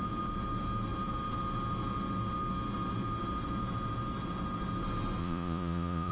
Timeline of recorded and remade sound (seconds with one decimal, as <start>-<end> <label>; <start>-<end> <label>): 0.0-5.2 recorded; 5.2-6.1 remade